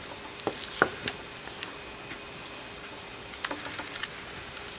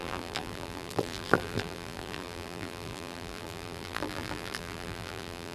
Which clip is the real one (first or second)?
first